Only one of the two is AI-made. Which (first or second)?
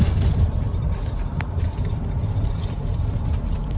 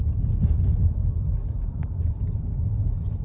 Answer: first